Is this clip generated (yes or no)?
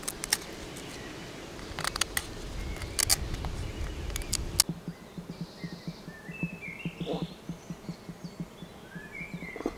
no